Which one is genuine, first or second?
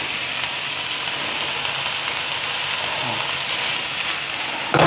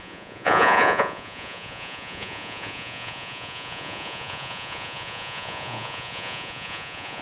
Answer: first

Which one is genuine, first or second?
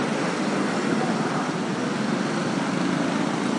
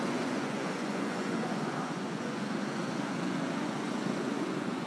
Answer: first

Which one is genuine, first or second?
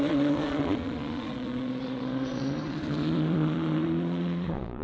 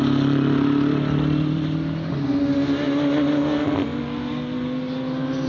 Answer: second